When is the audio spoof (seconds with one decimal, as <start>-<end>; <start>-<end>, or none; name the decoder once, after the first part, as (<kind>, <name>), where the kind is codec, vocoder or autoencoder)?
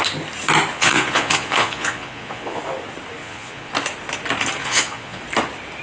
0.7-2.6 (vocoder, Vocos); 3.2-3.7; 4.6-5.2